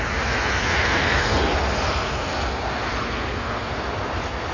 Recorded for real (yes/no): yes